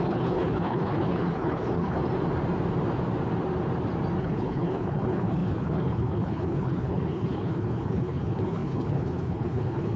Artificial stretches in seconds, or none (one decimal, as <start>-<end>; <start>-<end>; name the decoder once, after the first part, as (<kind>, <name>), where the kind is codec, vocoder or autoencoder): 0.0-2.0 (codec, HILCodec); 4.2-10.0